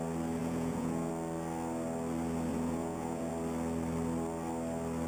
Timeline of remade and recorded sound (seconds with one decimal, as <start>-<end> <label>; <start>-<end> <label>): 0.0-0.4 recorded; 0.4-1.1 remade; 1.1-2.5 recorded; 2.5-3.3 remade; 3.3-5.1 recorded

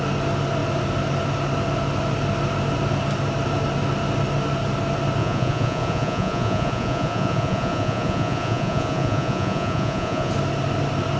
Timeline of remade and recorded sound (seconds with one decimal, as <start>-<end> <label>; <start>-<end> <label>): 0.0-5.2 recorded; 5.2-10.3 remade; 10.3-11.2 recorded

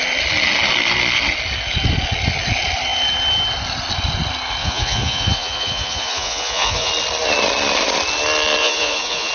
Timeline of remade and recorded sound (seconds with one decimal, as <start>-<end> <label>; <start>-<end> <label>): 0.0-4.6 recorded; 4.6-6.9 remade; 6.9-8.6 recorded; 8.6-9.3 remade